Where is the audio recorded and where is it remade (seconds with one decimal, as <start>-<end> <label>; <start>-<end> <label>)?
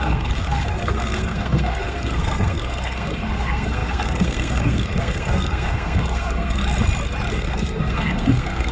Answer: 0.0-6.6 remade; 6.6-7.3 recorded; 7.3-8.7 remade